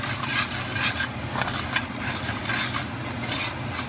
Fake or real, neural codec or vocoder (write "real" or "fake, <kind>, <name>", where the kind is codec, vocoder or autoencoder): real